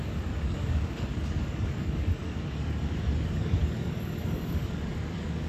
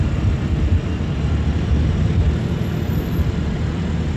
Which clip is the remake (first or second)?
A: first